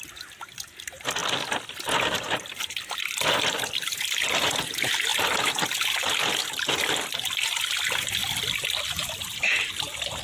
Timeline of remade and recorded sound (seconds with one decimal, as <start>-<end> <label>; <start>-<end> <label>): 0.0-1.2 remade; 1.2-3.7 recorded; 3.7-5.1 remade; 5.1-7.6 recorded; 7.6-8.2 remade; 8.2-8.9 recorded; 8.9-10.2 remade